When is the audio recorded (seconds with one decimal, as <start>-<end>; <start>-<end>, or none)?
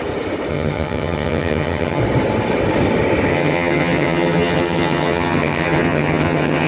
0.0-0.5; 2.0-3.3